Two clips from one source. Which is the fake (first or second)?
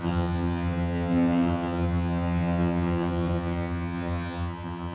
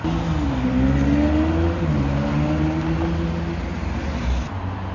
first